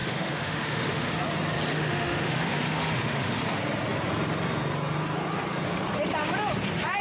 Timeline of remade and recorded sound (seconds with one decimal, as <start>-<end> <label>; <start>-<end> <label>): 0.0-1.1 remade; 1.1-1.7 recorded; 1.7-3.4 remade; 3.4-7.0 recorded